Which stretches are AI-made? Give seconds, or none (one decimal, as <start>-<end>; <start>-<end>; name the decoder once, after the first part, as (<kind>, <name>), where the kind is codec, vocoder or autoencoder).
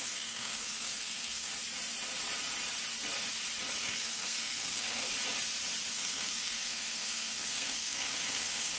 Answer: 0.0-1.5 (codec, SNAC); 3.8-5.1; 5.9-8.8